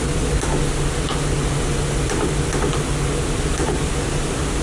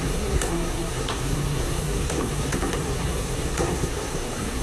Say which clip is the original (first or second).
first